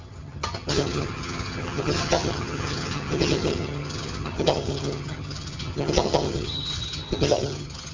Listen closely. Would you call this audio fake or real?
fake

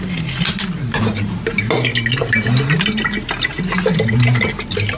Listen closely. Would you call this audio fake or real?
real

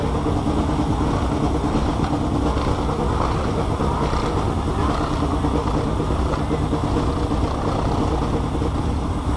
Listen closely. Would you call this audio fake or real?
real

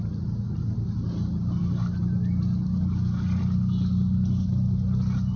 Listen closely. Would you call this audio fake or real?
real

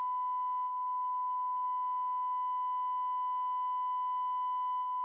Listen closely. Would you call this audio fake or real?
real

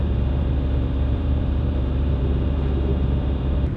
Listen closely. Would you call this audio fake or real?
fake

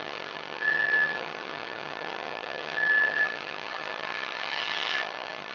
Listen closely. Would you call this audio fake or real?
fake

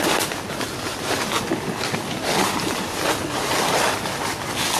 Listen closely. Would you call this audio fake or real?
real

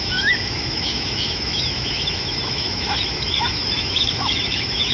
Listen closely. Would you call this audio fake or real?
fake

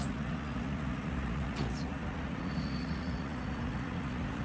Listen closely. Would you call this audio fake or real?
fake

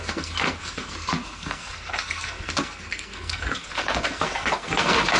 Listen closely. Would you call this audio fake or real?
fake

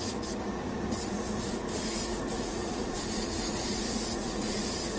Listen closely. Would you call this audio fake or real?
fake